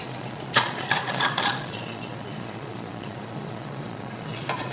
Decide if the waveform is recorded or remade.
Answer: remade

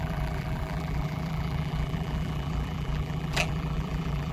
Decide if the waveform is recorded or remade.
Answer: remade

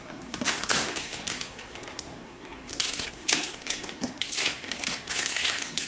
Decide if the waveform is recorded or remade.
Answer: remade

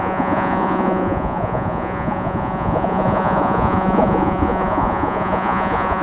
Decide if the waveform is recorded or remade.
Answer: remade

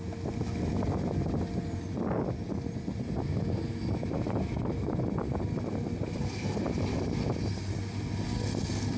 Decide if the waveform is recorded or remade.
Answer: recorded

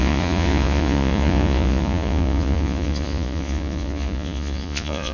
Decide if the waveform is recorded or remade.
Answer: remade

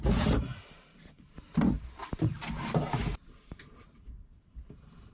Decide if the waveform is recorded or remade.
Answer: remade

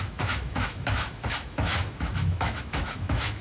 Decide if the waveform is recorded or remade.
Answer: remade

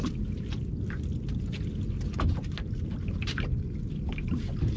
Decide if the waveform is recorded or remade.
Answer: recorded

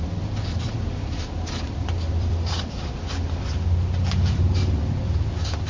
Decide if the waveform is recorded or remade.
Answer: remade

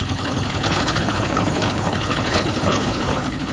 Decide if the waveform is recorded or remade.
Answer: remade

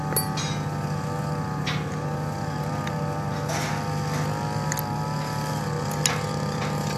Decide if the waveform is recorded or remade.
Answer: recorded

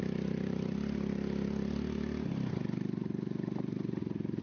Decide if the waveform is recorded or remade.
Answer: recorded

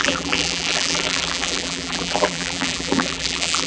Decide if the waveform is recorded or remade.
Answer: remade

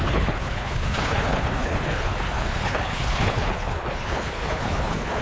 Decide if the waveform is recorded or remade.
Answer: remade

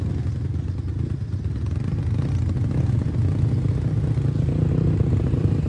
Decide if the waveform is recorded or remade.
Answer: recorded